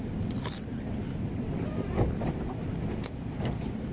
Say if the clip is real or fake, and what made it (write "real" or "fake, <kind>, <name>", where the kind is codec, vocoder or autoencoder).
fake, vocoder, BigVGAN v2